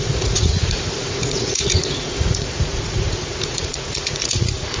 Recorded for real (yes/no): no